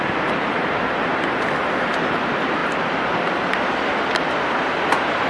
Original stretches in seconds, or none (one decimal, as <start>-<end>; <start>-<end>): 1.1-1.9